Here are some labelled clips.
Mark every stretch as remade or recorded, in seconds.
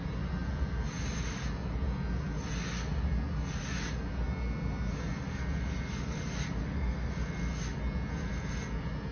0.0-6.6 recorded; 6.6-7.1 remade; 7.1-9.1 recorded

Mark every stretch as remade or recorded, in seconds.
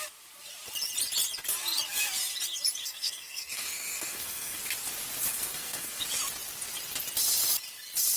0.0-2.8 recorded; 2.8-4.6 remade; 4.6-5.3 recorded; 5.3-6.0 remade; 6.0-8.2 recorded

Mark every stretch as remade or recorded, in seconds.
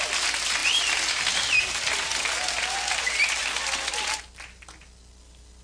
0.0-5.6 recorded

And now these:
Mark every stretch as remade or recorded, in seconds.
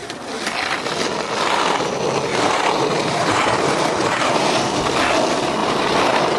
0.0-2.3 recorded; 2.3-4.8 remade; 4.8-5.6 recorded; 5.6-6.4 remade